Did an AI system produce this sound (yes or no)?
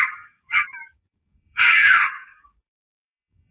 yes